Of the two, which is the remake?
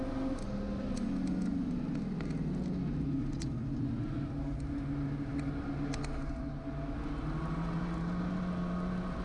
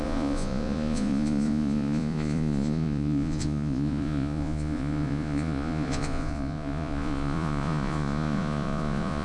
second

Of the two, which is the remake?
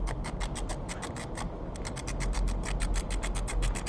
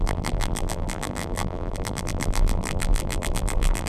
second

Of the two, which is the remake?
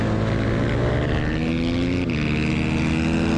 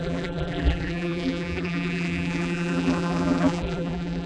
second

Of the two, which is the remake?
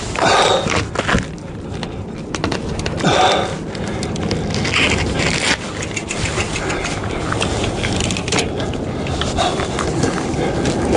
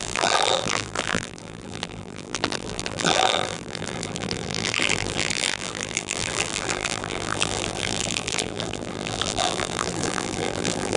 second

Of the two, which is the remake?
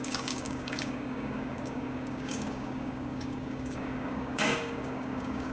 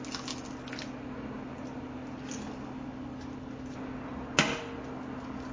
first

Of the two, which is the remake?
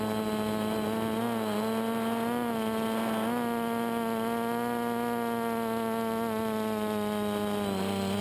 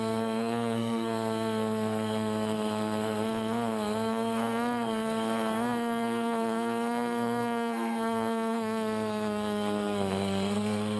second